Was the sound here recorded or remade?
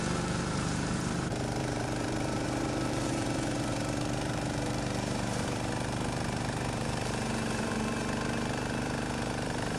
remade